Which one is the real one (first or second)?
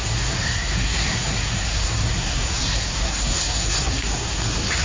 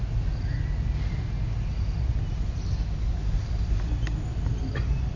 second